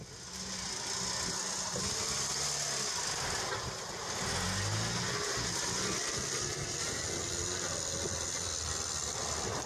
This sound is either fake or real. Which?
real